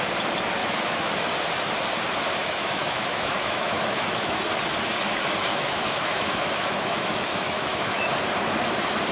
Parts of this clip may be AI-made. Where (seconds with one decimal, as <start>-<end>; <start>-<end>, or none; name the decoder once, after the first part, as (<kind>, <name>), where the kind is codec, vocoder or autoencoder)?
0.6-1.1 (autoencoder, DAC-VAE); 2.4-4.4; 5.5-8.1